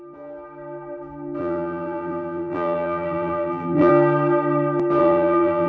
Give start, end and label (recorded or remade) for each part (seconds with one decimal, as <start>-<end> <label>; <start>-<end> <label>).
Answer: 0.0-1.4 recorded; 1.4-3.9 remade; 3.9-5.0 recorded; 5.0-5.7 remade